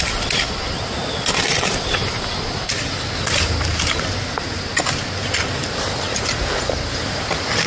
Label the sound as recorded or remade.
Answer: recorded